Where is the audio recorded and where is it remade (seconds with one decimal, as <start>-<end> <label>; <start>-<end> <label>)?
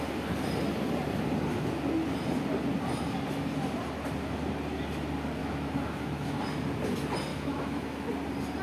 0.0-5.4 recorded; 5.4-6.4 remade; 6.4-7.3 recorded; 7.3-8.1 remade; 8.1-8.6 recorded